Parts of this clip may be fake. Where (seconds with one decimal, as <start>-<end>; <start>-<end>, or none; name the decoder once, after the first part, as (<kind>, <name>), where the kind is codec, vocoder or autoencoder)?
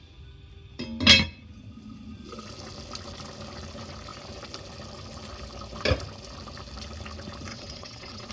7.5-8.3 (vocoder, WaveNeXt)